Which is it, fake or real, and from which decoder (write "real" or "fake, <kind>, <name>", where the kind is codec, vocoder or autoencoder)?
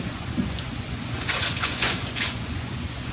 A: fake, vocoder, Vocos